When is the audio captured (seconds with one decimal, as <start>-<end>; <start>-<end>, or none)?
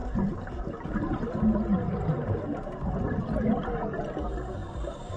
0.0-5.2